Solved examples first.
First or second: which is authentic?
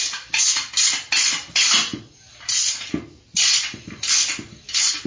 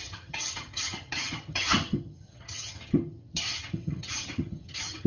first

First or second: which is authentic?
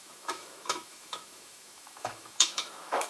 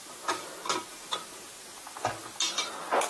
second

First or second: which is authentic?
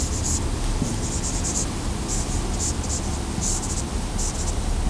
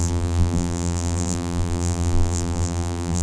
first